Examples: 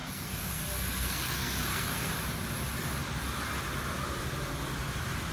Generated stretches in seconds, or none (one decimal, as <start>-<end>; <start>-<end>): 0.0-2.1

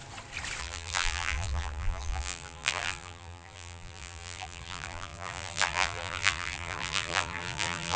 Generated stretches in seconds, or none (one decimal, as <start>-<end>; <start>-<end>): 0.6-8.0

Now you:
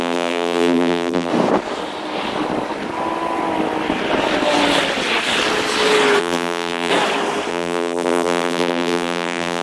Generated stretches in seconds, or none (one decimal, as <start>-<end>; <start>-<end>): 0.0-1.3; 6.2-6.9; 7.5-9.6

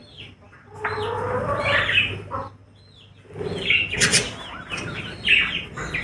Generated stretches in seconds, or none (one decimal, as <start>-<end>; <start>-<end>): none

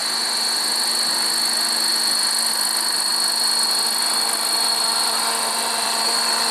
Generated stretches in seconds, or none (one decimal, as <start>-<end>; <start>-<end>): 2.5-3.1; 4.1-6.5

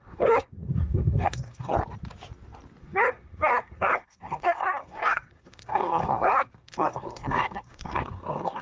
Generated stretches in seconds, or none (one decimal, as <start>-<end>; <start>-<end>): 0.0-1.7; 2.8-8.6